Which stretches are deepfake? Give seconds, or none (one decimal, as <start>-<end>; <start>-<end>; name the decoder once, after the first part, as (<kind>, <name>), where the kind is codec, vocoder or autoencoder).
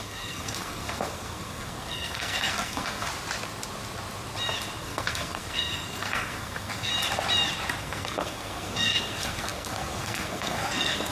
0.0-3.1 (codec, SNAC); 4.8-6.9; 7.8-11.1